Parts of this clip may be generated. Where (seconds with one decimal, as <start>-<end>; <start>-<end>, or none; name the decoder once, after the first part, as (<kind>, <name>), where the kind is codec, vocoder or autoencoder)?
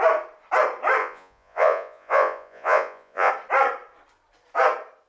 1.0-3.3 (vocoder, Vocos)